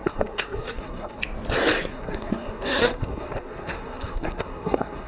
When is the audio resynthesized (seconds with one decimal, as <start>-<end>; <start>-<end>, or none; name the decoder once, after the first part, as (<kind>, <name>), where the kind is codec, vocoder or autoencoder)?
0.0-1.2 (codec, SNAC); 1.9-5.1